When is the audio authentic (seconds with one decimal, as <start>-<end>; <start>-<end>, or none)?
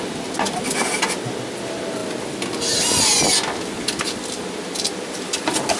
0.0-5.8